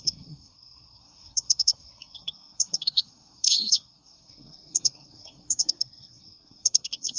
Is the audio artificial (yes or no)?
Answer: yes